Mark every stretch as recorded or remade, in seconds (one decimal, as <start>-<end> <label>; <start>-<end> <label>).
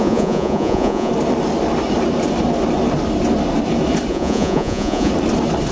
0.0-1.1 remade; 1.1-4.1 recorded; 4.1-5.1 remade; 5.1-5.7 recorded